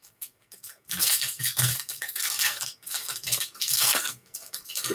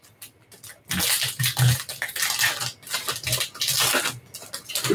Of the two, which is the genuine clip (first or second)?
second